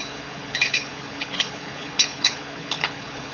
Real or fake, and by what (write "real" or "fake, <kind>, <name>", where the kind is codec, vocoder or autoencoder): fake, codec, HILCodec